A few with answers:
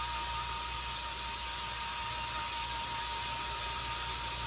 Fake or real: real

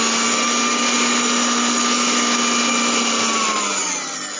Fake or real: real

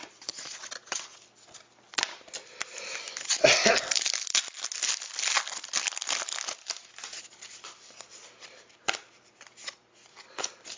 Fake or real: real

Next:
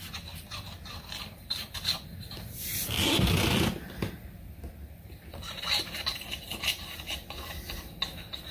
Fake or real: real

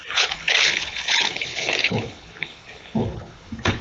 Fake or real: fake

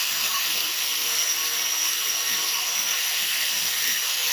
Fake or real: fake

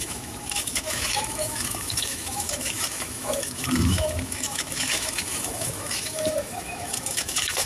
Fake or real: fake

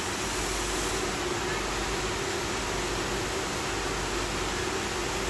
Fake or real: real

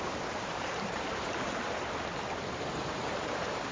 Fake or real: fake